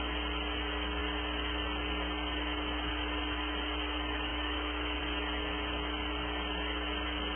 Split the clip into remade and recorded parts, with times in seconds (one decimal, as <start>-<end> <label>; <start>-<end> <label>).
0.0-4.3 recorded; 4.3-5.0 remade; 5.0-7.4 recorded